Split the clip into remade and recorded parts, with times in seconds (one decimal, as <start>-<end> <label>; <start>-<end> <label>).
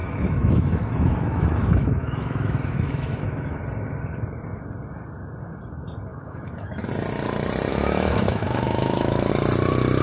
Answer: 0.0-3.6 remade; 3.6-6.1 recorded; 6.1-6.9 remade; 6.9-7.7 recorded; 7.7-9.3 remade; 9.3-10.0 recorded